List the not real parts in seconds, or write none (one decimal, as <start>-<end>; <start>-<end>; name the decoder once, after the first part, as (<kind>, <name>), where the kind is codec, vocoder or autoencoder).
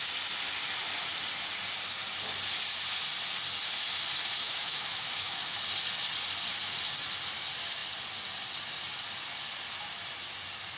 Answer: 4.4-5.6 (autoencoder, DAC-VAE)